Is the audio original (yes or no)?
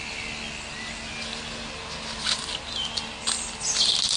yes